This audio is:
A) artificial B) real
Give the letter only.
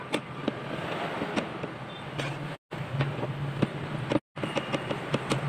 B